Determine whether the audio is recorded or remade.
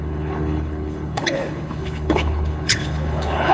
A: remade